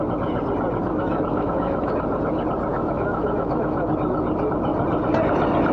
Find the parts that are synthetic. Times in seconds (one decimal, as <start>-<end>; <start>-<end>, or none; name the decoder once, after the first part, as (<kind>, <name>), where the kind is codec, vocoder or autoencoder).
0.8-1.9 (autoencoder, DAC-VAE); 2.7-3.9